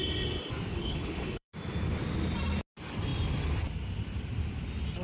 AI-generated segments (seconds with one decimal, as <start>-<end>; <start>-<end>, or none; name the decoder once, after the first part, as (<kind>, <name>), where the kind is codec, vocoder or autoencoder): 0.7-1.5 (codec, HILCodec)

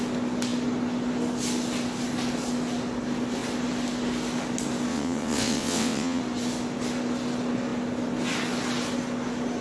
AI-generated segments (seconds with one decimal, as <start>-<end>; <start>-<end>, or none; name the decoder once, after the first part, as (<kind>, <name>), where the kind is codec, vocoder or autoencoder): 4.9-6.2 (vocoder, WaveNeXt)

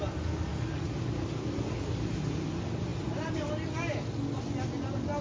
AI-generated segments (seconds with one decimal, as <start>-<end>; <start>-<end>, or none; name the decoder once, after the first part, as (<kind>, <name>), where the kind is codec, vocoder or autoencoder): none

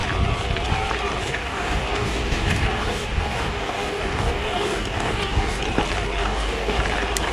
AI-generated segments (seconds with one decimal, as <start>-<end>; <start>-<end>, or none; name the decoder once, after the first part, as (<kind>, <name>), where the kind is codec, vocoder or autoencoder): 1.2-5.6 (codec, DAC); 6.2-6.8